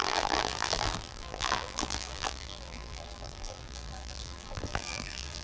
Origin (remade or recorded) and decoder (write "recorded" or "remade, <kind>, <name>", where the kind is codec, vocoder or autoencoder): remade, vocoder, BigVGAN v2